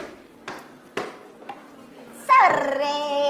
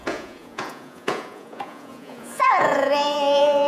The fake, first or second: second